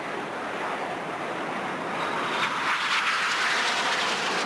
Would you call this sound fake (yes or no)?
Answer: no